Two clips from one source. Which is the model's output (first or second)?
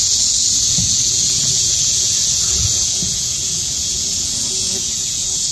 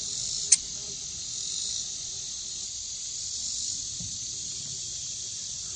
first